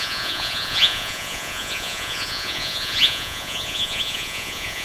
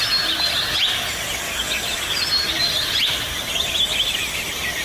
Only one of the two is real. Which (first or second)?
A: second